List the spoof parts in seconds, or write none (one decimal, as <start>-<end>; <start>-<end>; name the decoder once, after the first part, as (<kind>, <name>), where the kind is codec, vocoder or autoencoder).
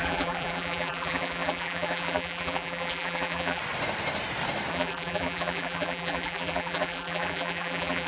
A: 0.0-3.6 (vocoder, BigVGAN v2); 4.7-8.1